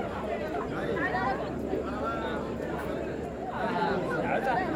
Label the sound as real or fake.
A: fake